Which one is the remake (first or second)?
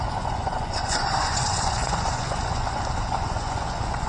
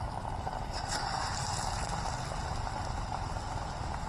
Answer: first